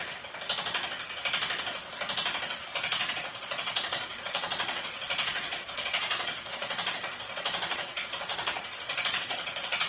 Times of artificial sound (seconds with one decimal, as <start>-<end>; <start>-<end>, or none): 2.6-9.9